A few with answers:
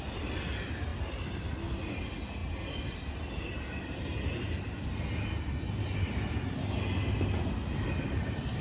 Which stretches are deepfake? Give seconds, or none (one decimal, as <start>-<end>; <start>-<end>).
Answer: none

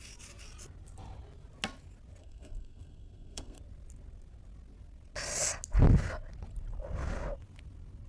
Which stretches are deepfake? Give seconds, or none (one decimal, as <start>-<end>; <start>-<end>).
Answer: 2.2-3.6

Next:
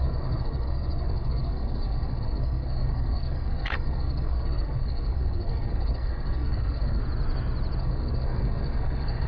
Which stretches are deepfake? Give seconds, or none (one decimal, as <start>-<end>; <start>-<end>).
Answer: 0.0-7.0; 7.8-9.3

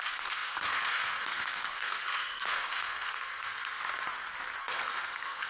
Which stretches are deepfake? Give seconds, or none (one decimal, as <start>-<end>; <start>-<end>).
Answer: 0.0-3.8; 4.6-5.5

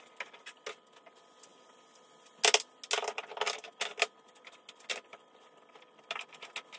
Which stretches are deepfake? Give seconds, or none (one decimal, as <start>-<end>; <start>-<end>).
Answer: none